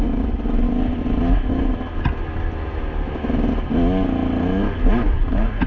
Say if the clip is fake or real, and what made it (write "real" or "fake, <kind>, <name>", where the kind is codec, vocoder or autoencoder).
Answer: real